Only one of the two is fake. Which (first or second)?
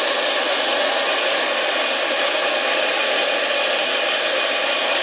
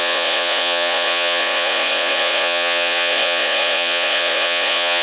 second